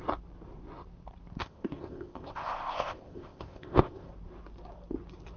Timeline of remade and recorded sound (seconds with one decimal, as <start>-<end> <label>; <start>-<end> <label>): 0.0-1.4 recorded; 1.4-4.1 remade; 4.1-5.4 recorded